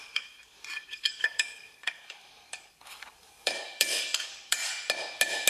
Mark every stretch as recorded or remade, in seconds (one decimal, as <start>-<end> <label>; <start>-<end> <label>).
0.0-4.7 remade; 4.7-5.5 recorded